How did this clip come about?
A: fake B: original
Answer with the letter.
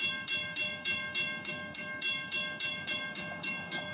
A